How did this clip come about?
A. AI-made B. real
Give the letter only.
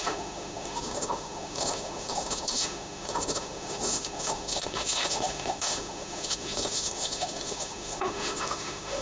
A